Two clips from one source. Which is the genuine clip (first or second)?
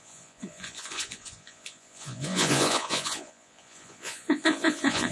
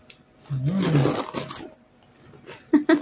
second